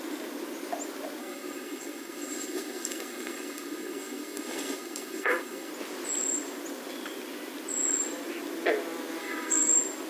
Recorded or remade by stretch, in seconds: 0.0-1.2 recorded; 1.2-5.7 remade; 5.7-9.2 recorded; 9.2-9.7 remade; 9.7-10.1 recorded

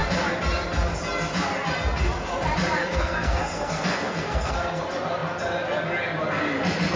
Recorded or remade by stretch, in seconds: 0.0-2.8 recorded; 2.8-4.8 remade; 4.8-7.0 recorded

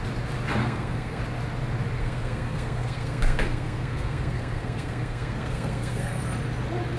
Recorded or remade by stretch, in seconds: 0.0-0.6 recorded; 0.6-1.2 remade; 1.2-2.0 recorded; 2.0-6.2 remade; 6.2-7.0 recorded

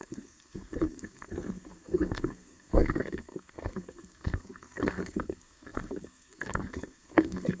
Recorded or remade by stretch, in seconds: 0.0-7.6 remade

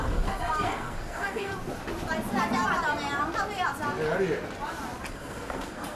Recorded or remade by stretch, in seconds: 0.0-1.5 remade; 1.5-5.1 recorded; 5.1-6.0 remade